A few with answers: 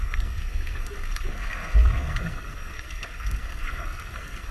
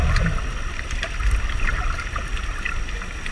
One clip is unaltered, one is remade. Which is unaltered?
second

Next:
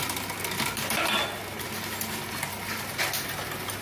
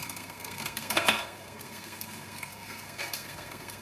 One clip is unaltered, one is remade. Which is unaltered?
first